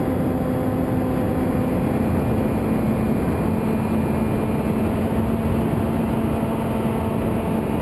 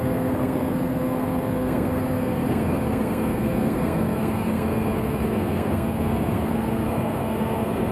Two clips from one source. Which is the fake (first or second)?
second